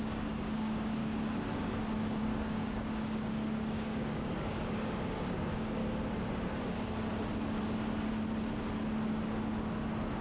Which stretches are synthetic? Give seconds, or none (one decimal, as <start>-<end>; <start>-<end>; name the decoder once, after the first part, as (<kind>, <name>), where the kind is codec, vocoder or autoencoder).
0.0-1.0 (codec, DAC); 2.2-5.8